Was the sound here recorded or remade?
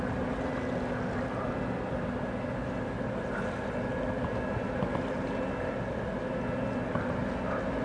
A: recorded